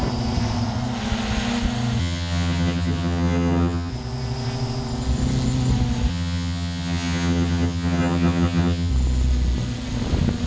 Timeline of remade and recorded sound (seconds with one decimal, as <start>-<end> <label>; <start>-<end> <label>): 0.0-2.0 recorded; 2.0-3.9 remade; 3.9-6.1 recorded; 6.1-8.9 remade; 8.9-10.5 recorded